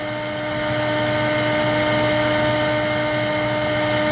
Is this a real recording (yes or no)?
yes